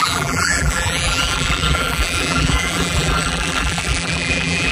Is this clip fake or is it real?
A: fake